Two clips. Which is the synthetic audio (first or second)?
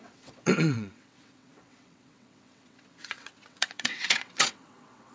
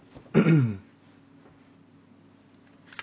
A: first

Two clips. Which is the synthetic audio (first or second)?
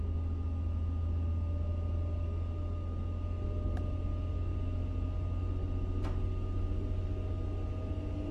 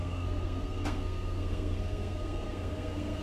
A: second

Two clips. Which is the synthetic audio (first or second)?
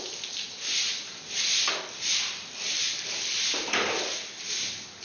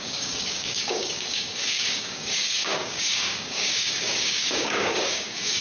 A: second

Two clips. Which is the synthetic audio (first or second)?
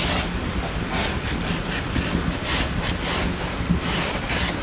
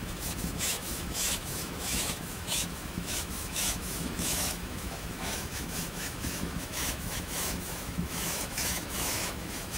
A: second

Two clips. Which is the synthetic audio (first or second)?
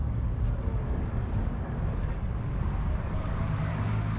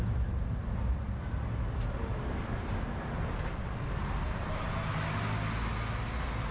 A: first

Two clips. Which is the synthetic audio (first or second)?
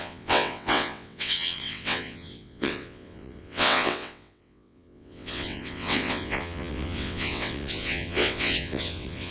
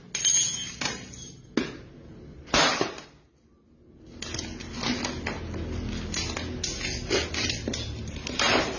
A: first